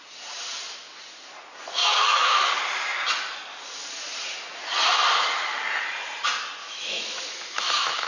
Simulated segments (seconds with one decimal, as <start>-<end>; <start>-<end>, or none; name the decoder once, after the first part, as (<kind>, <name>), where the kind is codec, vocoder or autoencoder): 1.8-2.5 (autoencoder, DAC-VAE); 6.6-8.1